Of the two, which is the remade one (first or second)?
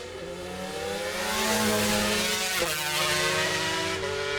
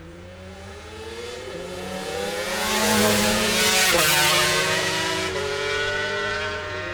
second